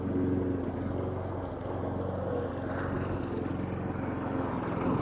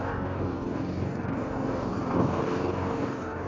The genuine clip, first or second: first